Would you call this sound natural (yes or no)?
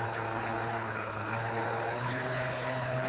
no